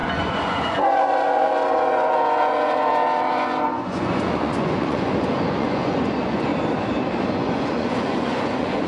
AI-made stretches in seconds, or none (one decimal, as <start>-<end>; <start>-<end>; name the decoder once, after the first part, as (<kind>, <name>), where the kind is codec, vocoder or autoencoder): 0.0-6.5 (vocoder, Vocos); 7.3-8.9